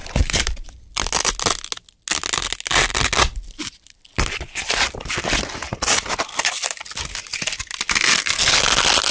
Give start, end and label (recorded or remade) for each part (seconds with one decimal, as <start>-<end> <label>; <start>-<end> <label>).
0.0-0.7 remade; 0.7-9.1 recorded